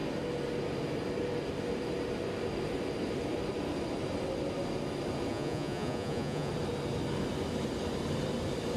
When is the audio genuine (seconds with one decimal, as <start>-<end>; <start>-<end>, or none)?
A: 0.0-5.3; 6.5-8.8